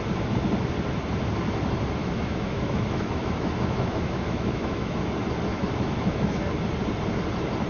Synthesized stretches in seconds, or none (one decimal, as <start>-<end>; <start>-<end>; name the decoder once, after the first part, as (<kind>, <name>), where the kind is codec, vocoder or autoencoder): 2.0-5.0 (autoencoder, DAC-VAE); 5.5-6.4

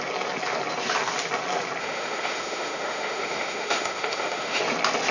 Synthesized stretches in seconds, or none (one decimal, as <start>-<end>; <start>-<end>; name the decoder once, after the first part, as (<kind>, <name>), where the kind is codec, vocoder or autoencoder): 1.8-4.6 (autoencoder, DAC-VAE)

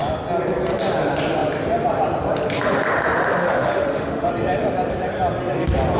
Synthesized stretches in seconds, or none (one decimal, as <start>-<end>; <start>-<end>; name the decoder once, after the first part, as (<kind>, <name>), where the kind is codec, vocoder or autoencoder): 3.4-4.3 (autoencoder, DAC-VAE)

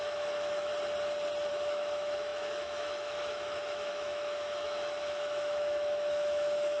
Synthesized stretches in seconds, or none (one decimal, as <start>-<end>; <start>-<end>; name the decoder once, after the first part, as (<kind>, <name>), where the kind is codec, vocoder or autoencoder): 0.0-0.7 (autoencoder, DAC-VAE); 1.5-6.8

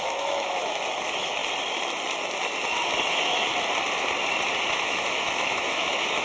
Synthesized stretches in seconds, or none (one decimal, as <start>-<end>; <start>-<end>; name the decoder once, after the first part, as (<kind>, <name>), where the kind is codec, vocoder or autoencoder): 0.0-1.4 (autoencoder, DAC-VAE); 3.1-3.5; 4.7-6.2